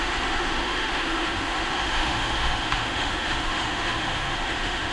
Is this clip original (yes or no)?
no